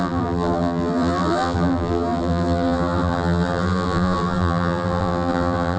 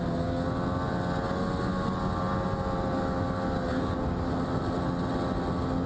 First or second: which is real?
second